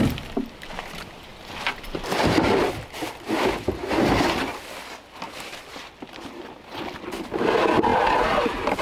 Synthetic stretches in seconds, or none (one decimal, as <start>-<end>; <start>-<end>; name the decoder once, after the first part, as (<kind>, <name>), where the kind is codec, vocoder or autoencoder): none

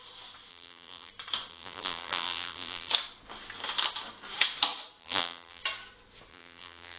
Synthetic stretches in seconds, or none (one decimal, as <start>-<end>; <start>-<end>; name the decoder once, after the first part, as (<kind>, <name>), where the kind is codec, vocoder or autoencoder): 0.5-1.1 (vocoder, BigVGAN v2); 1.5-2.9; 5.0-5.6; 6.3-7.0

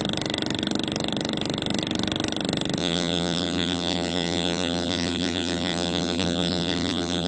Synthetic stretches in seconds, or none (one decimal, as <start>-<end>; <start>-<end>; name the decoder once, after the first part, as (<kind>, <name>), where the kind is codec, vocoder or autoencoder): 2.8-7.3 (vocoder, BigVGAN v2)

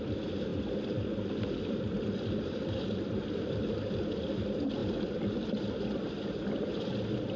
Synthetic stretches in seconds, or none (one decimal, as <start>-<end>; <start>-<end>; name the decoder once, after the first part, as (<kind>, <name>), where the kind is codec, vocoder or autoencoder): 0.5-3.9 (vocoder, BigVGAN v2); 4.8-5.3

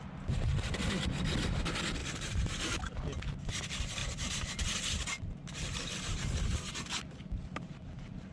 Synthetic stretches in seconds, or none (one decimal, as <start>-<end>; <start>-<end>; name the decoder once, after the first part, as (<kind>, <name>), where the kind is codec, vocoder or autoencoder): 2.0-2.8 (vocoder, BigVGAN v2); 4.0-4.9

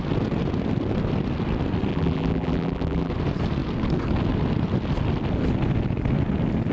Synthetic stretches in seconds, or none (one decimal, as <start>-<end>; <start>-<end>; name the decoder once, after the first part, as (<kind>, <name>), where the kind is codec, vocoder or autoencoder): 1.9-3.1 (vocoder, BigVGAN v2)

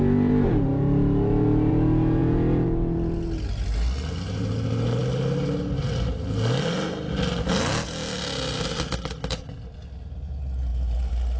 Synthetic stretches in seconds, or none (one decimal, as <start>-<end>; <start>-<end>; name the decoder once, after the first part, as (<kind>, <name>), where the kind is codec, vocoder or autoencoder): 10.7-11.4 (vocoder, BigVGAN v2)

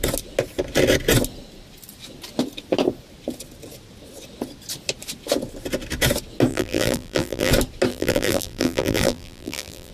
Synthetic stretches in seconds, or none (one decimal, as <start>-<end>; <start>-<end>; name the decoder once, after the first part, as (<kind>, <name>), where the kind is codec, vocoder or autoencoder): 6.5-7.5 (vocoder, BigVGAN v2); 7.9-9.9